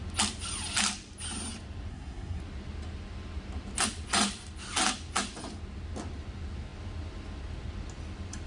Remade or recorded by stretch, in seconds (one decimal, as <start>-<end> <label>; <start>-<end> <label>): 0.0-1.9 recorded; 1.9-2.4 remade; 2.4-8.5 recorded